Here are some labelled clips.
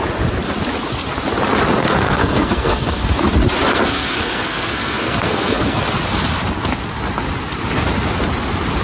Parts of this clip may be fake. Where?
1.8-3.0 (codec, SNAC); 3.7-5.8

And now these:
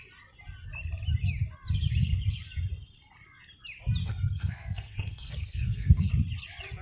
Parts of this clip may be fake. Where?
4.0-6.1 (codec, SNAC)

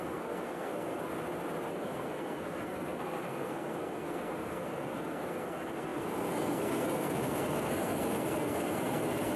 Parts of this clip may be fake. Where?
0.0-1.1 (codec, SNAC); 1.7-9.4

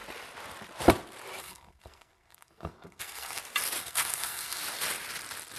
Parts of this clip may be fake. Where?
1.4-3.4 (codec, SNAC); 3.8-4.6